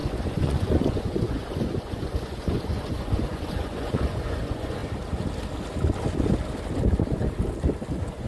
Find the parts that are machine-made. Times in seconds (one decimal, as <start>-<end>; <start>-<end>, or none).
0.0-4.8; 7.9-8.3